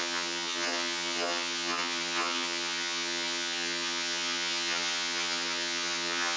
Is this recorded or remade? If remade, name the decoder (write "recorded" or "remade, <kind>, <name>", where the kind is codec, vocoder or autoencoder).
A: remade, vocoder, HiFi-GAN